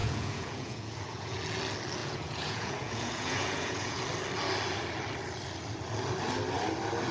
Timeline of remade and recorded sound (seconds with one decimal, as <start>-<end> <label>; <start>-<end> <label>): 0.0-1.4 remade; 1.4-2.0 recorded; 2.0-4.0 remade; 4.0-7.1 recorded